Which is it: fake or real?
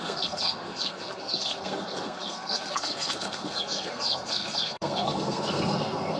fake